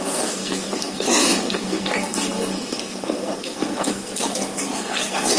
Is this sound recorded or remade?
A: remade